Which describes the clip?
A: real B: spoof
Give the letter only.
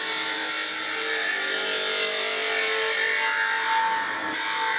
A